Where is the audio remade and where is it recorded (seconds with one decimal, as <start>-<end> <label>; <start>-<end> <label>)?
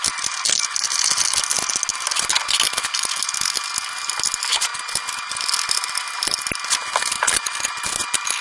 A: 0.0-8.4 recorded